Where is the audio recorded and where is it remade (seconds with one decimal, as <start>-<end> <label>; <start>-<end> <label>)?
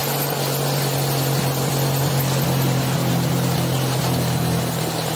0.0-5.2 recorded